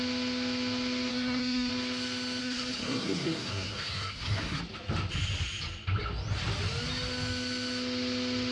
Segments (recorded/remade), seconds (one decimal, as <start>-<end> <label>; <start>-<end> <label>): 0.0-1.1 recorded; 1.1-1.7 remade; 1.7-2.4 recorded; 2.4-4.6 remade; 4.6-8.5 recorded

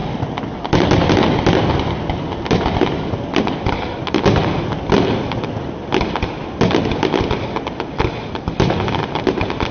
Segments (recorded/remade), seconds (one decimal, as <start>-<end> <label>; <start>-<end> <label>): 0.0-9.7 recorded

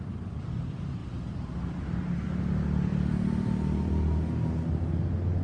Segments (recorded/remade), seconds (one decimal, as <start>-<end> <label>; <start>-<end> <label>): 0.0-5.4 recorded

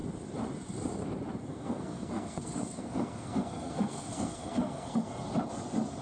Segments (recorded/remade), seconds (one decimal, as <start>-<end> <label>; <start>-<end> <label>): 0.0-1.5 recorded; 1.5-5.1 remade; 5.1-6.0 recorded

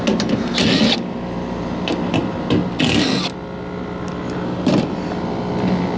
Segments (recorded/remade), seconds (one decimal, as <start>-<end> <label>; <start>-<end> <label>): 0.0-6.0 recorded

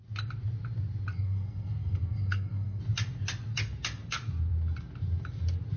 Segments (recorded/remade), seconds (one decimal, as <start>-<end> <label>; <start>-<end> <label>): 0.0-1.1 recorded; 1.1-2.8 remade; 2.8-5.8 recorded

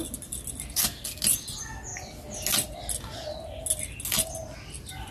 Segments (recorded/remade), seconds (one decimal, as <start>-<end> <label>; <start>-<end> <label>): 0.0-5.1 recorded